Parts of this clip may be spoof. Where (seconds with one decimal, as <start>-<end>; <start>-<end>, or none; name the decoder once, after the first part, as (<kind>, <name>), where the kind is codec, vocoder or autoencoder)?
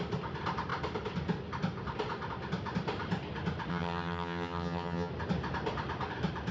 3.7-5.1 (vocoder, HiFi-GAN)